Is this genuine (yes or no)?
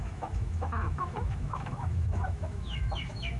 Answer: no